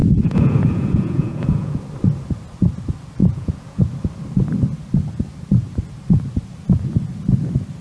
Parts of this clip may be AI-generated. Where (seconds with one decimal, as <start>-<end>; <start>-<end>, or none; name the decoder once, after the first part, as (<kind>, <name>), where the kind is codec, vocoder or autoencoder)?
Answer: 0.0-1.8 (vocoder, Vocos); 3.2-3.8